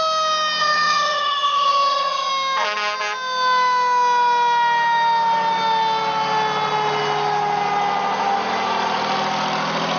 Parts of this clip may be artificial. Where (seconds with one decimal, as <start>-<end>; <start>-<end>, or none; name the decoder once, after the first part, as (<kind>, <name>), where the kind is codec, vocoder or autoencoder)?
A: 0.6-2.3 (vocoder, HiFi-GAN)